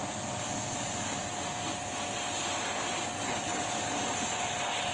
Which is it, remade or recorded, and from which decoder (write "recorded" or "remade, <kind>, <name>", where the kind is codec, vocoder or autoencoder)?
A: recorded